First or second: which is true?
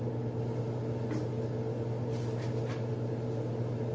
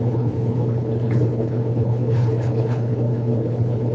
first